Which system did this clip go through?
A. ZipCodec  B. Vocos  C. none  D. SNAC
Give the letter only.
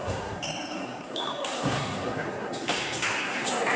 D